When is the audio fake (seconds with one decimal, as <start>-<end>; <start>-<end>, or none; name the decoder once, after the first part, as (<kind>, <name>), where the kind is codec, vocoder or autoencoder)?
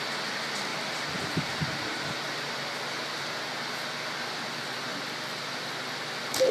0.7-2.3 (vocoder, BigVGAN v2)